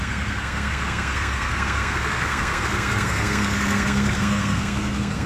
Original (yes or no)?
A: no